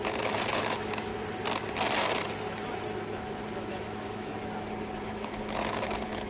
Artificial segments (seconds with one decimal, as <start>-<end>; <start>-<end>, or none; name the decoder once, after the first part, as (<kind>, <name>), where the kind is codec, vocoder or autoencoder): 0.0-1.1 (autoencoder, DAC-VAE); 3.7-4.3; 5.0-6.3